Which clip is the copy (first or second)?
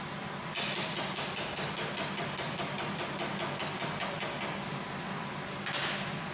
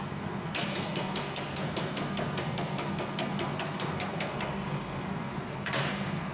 second